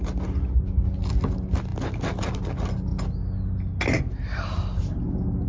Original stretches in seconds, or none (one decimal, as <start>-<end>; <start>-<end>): 0.0-5.5